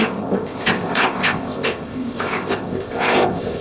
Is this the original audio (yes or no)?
no